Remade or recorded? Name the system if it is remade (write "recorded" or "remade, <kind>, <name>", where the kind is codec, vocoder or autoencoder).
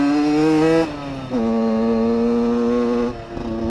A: recorded